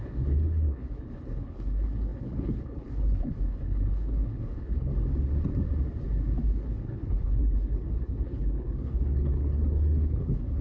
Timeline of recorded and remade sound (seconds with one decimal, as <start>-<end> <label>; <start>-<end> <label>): 0.0-4.9 remade; 4.9-6.4 recorded; 6.4-10.6 remade